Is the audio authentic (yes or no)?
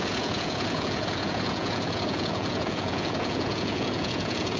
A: no